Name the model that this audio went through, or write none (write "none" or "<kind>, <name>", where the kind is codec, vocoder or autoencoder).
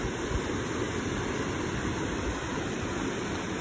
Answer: vocoder, BigVGAN v2